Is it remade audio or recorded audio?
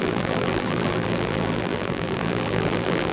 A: remade